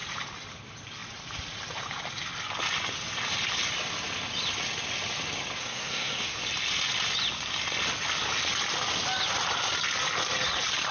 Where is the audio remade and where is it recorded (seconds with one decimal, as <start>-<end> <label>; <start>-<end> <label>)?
0.0-5.6 recorded; 5.6-6.4 remade; 6.4-10.9 recorded